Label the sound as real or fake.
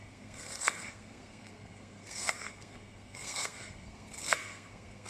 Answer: fake